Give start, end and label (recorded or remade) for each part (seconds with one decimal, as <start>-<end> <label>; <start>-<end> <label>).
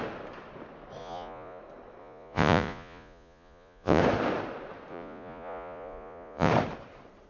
0.0-1.0 recorded; 1.0-1.6 remade; 1.6-2.0 recorded; 2.0-4.0 remade; 4.0-4.9 recorded; 4.9-6.5 remade; 6.5-7.3 recorded